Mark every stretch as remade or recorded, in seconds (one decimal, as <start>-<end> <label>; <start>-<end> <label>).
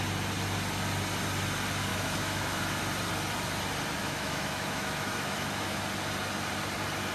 0.0-1.9 recorded; 1.9-2.8 remade; 2.8-4.0 recorded; 4.0-5.8 remade; 5.8-7.1 recorded